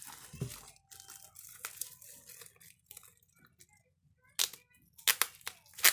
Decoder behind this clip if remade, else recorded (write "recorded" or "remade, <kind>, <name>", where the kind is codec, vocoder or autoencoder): recorded